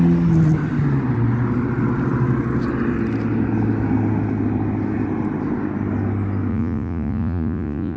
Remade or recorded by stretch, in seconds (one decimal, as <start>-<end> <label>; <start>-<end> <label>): 0.0-6.5 recorded; 6.5-8.0 remade